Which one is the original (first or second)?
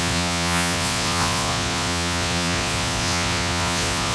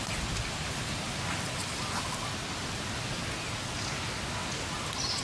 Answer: second